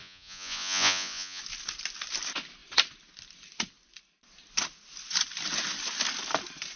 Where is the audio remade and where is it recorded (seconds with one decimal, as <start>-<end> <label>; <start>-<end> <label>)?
0.0-1.4 remade; 1.4-6.8 recorded